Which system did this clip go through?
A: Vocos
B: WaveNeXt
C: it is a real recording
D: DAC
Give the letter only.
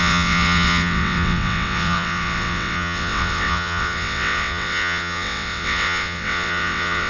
B